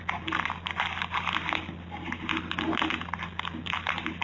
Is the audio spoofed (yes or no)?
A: no